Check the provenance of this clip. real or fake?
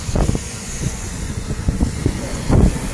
fake